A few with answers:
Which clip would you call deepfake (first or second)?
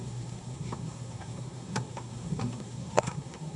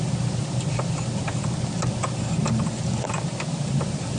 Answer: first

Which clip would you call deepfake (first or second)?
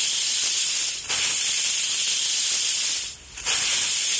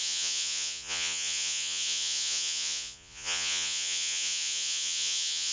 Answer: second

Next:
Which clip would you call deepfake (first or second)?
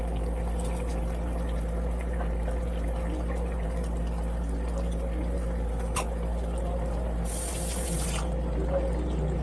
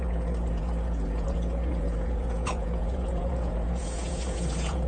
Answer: second